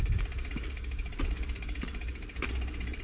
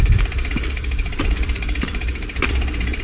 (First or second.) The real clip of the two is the first